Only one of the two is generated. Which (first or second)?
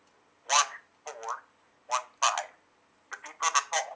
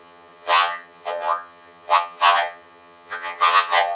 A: second